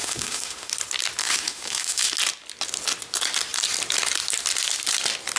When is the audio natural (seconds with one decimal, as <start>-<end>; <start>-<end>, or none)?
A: 0.7-1.2; 2.1-5.4